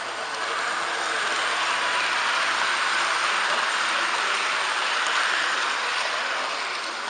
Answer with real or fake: real